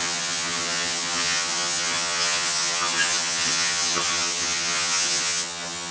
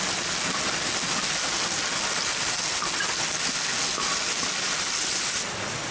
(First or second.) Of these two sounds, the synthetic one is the first